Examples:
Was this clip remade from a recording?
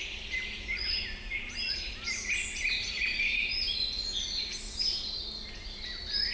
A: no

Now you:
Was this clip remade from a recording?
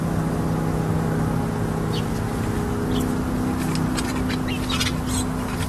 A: no